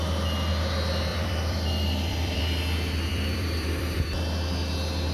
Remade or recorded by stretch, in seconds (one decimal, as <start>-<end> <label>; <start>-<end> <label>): 0.0-1.1 recorded; 1.1-2.4 remade; 2.4-3.1 recorded; 3.1-4.1 remade; 4.1-5.1 recorded